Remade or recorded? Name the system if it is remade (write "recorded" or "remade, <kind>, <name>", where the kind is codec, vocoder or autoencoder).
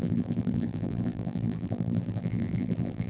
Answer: remade, vocoder, BigVGAN v2